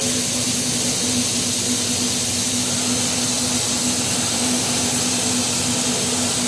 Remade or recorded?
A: recorded